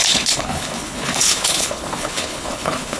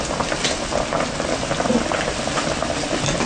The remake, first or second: first